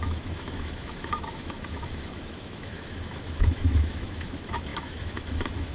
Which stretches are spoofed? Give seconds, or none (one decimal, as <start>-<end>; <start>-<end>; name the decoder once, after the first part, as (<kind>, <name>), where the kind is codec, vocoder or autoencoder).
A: 0.0-5.7 (autoencoder, DAC-VAE)